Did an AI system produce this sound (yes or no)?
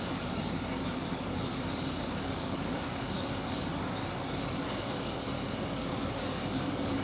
yes